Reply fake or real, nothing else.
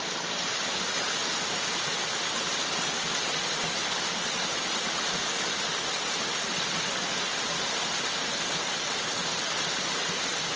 real